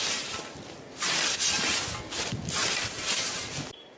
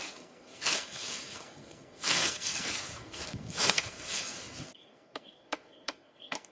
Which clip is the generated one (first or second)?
second